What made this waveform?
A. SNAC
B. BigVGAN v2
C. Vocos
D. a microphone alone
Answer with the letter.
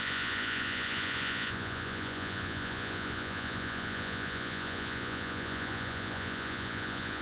C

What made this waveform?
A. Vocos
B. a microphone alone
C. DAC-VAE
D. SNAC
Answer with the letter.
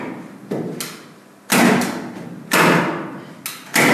B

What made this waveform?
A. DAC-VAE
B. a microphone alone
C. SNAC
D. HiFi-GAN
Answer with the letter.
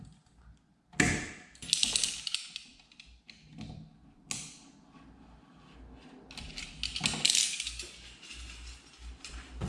B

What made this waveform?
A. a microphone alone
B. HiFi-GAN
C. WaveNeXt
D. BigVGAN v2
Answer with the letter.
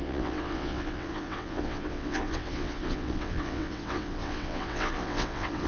C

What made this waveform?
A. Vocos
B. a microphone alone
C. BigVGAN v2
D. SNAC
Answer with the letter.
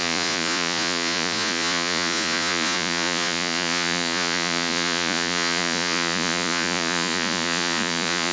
A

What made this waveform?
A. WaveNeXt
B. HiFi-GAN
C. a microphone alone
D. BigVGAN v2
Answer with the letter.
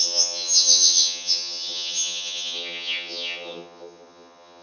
B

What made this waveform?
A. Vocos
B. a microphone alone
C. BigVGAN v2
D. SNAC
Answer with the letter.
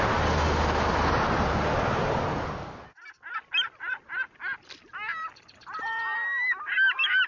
B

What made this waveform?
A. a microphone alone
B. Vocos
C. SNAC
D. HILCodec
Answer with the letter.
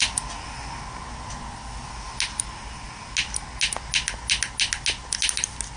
A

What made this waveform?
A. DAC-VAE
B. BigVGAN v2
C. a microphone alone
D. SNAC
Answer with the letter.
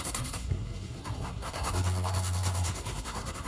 D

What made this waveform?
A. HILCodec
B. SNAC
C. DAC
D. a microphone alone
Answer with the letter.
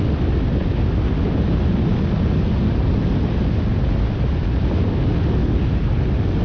D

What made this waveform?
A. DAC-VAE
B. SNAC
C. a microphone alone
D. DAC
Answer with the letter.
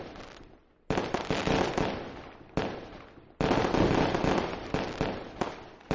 C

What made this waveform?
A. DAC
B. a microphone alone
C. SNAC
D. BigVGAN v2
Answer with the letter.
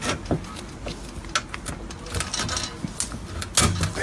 B